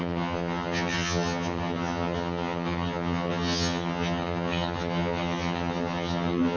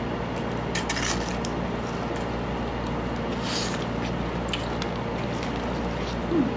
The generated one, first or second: first